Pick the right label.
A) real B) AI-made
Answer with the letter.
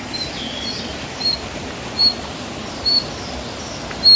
A